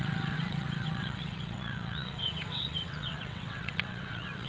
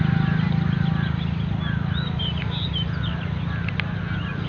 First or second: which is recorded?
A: second